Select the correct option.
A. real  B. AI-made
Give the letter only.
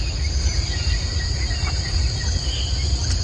A